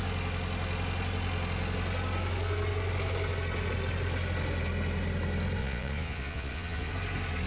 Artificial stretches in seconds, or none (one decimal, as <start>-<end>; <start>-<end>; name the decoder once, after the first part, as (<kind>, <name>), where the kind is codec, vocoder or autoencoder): 5.6-6.9 (vocoder, Vocos)